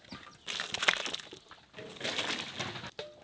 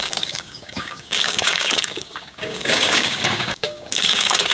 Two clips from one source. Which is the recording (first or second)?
first